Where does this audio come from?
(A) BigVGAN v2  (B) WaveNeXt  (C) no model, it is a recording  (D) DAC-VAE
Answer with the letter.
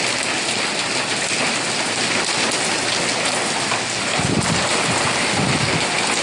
C